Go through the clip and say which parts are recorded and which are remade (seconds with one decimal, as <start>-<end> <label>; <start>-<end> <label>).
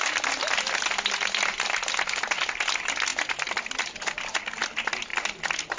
0.0-5.8 recorded